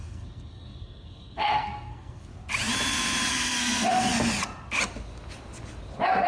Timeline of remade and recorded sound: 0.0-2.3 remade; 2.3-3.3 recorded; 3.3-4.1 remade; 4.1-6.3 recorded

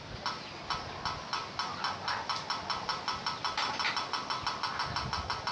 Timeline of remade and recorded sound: 0.0-5.5 recorded

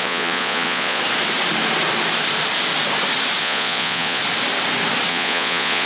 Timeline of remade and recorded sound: 0.0-1.0 remade; 1.0-3.4 recorded; 3.4-4.2 remade; 4.2-5.1 recorded; 5.1-5.9 remade